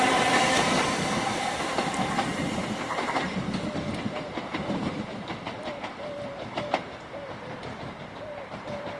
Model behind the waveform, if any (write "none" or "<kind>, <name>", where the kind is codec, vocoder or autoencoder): vocoder, BigVGAN v2